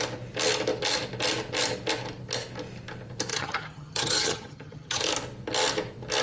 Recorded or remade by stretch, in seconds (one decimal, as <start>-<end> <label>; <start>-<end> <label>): 0.0-3.3 recorded; 3.3-5.0 remade; 5.0-6.2 recorded